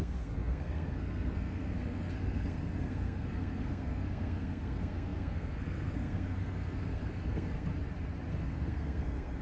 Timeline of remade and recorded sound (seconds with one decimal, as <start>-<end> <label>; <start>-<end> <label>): 0.0-7.7 remade; 7.7-8.3 recorded; 8.3-9.4 remade